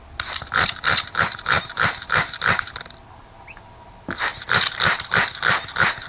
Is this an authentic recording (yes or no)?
yes